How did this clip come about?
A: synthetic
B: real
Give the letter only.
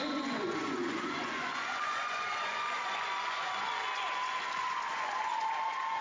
A